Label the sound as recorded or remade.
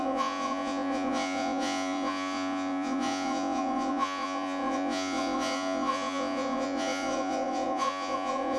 remade